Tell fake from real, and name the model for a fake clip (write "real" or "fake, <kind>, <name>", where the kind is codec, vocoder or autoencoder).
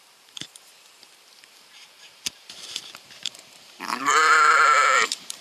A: fake, vocoder, BigVGAN v2